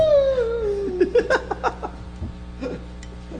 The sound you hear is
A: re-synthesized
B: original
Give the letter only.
B